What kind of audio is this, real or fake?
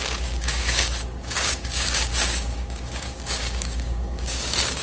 fake